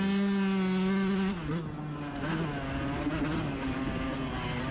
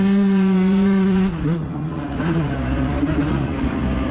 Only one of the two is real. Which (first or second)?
first